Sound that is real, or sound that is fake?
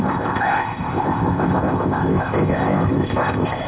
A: fake